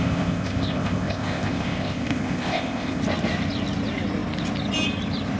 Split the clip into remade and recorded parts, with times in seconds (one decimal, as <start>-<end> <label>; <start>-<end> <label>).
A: 0.0-3.0 remade; 3.0-5.4 recorded